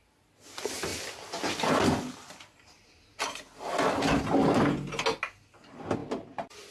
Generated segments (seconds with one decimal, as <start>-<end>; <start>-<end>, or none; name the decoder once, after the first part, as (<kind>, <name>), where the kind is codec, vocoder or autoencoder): none